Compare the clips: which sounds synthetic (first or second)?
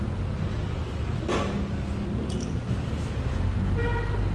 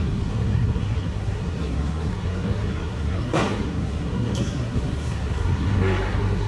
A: second